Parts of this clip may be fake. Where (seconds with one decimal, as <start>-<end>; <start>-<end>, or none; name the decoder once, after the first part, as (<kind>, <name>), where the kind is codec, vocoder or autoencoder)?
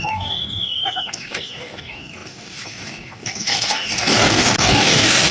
0.0-5.3 (codec, DAC)